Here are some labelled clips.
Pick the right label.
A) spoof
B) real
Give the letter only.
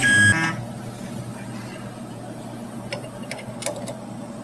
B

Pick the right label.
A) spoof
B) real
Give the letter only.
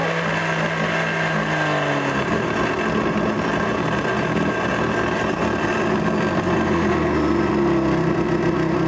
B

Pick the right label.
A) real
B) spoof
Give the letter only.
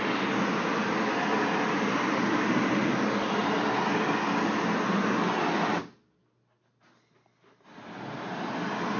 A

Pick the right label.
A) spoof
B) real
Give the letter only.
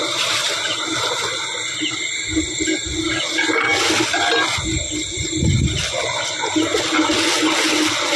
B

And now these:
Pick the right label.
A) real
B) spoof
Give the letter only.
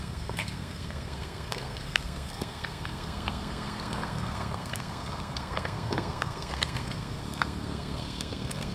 B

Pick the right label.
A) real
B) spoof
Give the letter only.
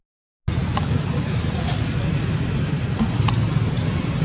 A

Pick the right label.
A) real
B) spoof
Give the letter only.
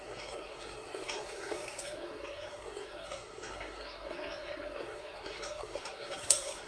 B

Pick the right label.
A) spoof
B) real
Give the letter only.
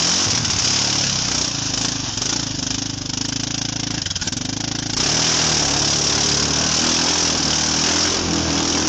B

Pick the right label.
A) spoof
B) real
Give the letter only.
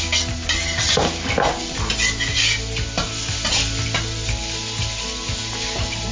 B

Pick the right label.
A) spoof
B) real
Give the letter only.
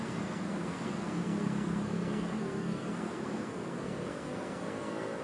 A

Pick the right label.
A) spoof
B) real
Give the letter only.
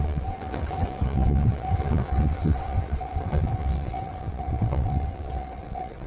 A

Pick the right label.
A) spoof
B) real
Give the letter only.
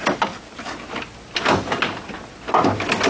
B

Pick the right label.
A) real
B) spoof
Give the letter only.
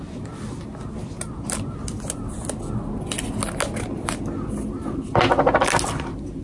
A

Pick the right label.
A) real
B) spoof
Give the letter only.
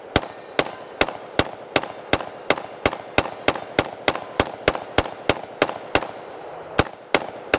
A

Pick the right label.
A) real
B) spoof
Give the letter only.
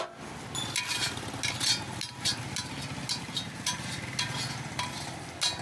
A